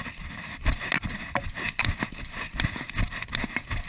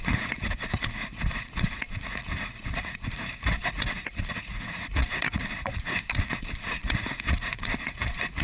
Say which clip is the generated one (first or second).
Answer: second